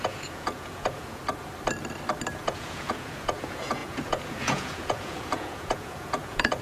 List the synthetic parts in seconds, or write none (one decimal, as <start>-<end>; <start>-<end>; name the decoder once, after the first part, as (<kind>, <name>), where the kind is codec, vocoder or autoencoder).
0.0-1.2 (vocoder, Vocos); 2.3-6.6